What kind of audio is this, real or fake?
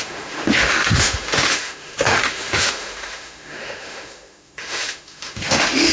fake